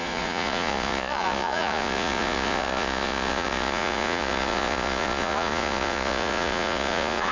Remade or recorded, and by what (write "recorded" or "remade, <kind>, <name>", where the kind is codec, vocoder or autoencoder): remade, vocoder, Vocos